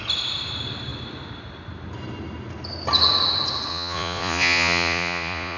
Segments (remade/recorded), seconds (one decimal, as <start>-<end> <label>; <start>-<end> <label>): 0.0-3.7 recorded; 3.7-5.6 remade